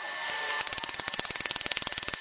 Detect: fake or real real